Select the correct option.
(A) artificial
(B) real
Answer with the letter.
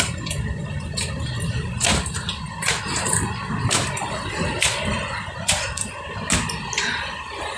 B